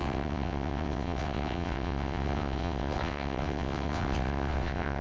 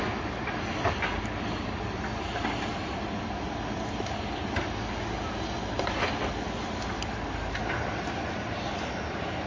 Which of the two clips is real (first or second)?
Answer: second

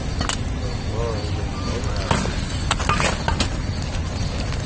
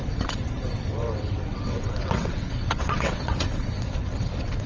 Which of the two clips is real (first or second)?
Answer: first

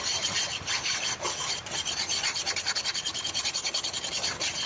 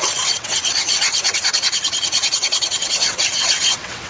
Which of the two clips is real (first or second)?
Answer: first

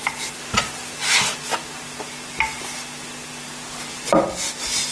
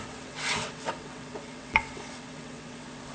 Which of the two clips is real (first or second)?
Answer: first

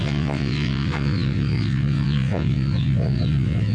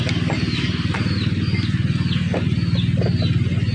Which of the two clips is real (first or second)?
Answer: second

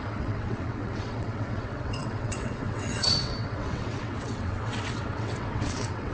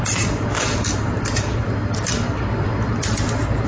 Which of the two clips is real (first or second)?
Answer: second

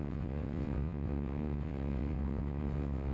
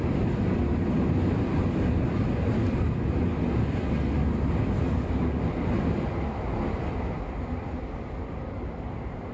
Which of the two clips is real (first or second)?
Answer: second